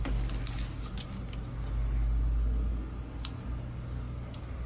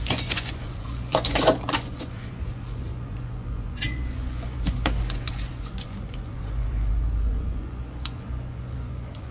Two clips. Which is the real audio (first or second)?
first